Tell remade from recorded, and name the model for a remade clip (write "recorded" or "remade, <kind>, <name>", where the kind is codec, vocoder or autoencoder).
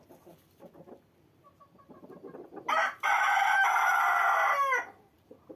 recorded